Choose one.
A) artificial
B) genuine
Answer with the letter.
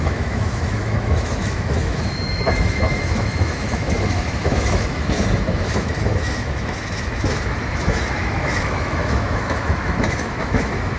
A